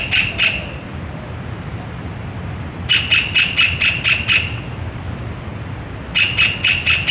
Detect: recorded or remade recorded